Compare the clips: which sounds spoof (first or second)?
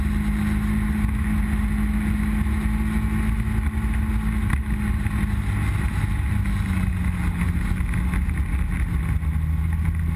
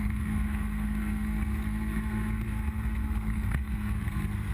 second